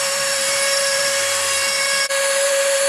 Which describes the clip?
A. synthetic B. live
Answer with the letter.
A